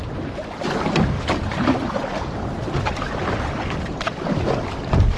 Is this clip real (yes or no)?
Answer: yes